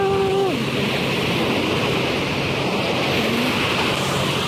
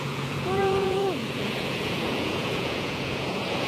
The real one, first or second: first